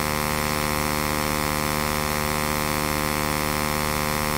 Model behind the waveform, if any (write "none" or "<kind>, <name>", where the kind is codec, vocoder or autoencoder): none